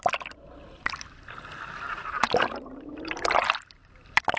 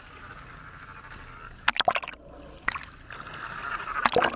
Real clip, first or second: second